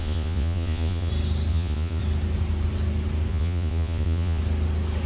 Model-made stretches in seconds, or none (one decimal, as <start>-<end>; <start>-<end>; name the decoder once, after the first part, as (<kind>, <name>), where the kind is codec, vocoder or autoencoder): 0.0-1.1 (vocoder, Vocos); 1.5-2.0; 3.3-4.4